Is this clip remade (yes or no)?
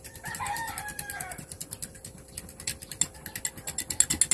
no